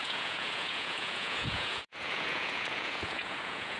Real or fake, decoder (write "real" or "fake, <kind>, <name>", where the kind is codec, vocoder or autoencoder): fake, vocoder, Vocos